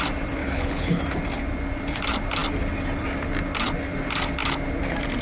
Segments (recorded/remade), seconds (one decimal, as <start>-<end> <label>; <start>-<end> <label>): 0.0-0.4 recorded; 0.4-1.0 remade; 1.0-5.2 recorded